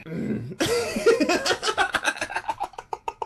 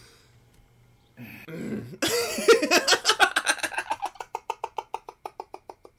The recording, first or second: second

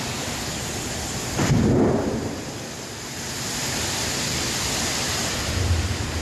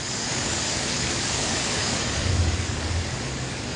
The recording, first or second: first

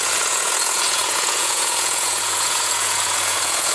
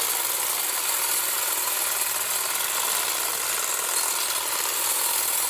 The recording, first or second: second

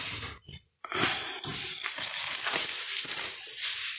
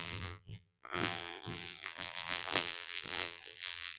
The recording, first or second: first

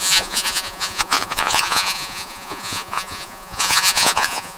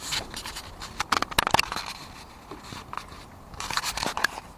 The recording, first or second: second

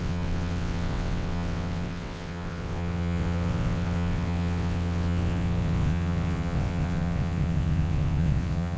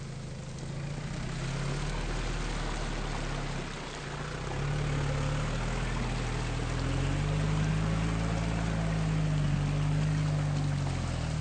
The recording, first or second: second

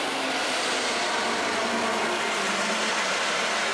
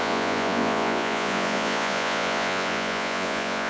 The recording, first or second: first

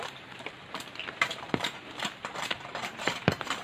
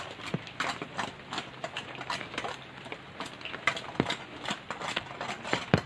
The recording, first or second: second